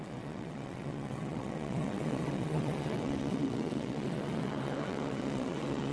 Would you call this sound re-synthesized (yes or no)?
yes